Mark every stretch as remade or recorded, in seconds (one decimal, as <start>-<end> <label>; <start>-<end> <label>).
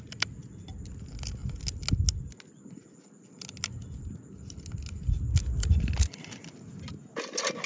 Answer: 0.0-7.7 recorded